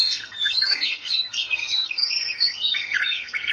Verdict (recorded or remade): remade